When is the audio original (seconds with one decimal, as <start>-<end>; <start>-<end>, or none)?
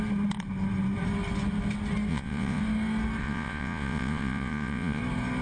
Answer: 0.0-2.1; 2.6-3.2; 5.0-5.4